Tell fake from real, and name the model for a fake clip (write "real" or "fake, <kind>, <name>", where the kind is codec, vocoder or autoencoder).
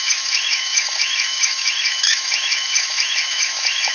fake, autoencoder, DAC-VAE